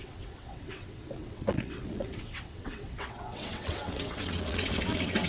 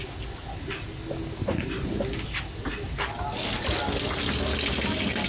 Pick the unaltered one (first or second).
second